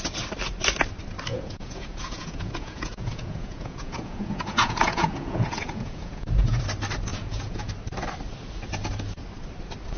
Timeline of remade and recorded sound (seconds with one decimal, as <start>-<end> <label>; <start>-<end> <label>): 0.0-1.3 recorded; 1.3-6.6 remade; 6.6-7.1 recorded; 7.1-7.7 remade; 7.7-10.0 recorded